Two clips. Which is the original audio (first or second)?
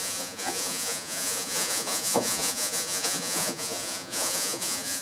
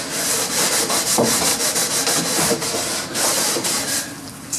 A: second